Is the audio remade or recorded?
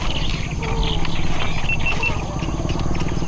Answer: recorded